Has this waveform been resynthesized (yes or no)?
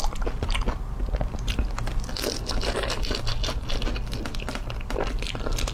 no